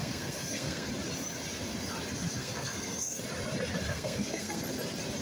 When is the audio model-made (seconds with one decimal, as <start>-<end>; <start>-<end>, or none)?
0.0-0.9; 2.4-3.2; 3.9-4.6